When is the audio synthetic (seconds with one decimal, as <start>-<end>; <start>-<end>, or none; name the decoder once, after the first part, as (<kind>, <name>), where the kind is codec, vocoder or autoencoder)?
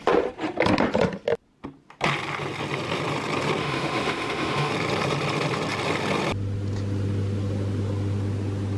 3.6-4.7 (autoencoder, DAC-VAE)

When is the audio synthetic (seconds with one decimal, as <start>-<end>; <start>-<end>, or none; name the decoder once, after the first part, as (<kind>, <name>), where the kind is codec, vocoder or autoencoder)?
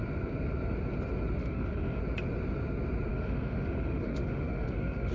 1.4-2.0 (autoencoder, DAC-VAE); 3.1-5.1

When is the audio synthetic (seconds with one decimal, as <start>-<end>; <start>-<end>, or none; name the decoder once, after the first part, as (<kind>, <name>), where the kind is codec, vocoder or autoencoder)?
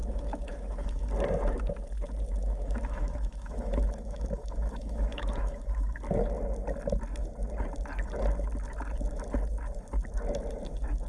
0.0-1.0 (autoencoder, DAC-VAE); 2.4-5.9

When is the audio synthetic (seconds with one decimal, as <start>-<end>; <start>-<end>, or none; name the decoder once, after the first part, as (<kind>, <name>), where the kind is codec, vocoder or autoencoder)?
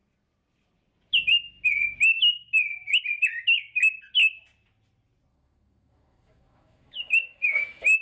5.3-8.0 (autoencoder, DAC-VAE)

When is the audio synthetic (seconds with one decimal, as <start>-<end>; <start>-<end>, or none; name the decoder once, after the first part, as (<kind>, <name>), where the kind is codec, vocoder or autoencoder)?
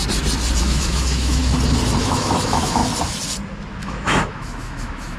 0.6-1.4 (autoencoder, DAC-VAE); 2.0-2.8; 3.8-5.2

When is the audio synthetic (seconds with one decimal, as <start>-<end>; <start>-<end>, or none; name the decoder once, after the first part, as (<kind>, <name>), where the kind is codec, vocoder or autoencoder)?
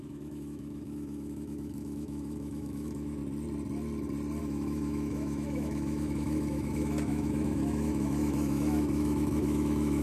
0.0-3.2 (autoencoder, DAC-VAE); 4.4-10.0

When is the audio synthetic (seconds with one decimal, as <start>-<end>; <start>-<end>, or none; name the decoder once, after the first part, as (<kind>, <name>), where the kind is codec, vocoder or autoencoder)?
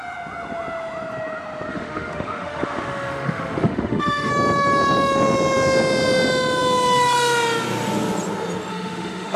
1.7-4.3 (autoencoder, DAC-VAE); 8.7-9.4